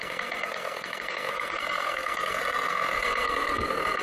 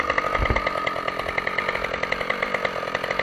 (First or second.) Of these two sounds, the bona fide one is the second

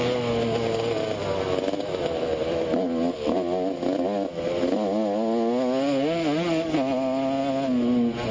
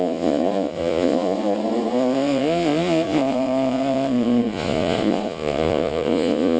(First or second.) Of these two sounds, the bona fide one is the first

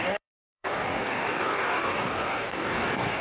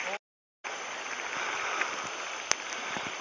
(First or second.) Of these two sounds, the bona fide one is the second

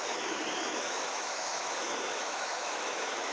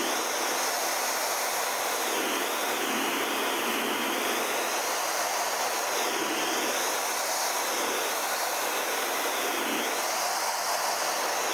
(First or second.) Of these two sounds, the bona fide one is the second